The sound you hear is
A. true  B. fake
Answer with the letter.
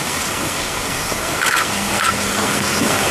B